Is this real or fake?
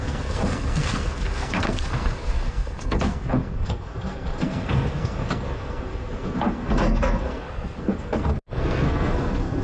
fake